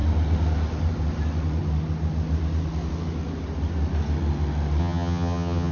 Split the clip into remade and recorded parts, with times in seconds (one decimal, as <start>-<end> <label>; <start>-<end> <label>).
0.0-4.8 recorded; 4.8-5.7 remade